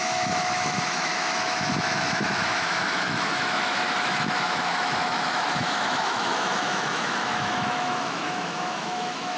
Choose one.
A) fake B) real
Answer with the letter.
A